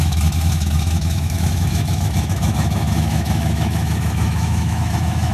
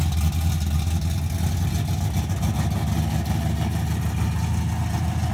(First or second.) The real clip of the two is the second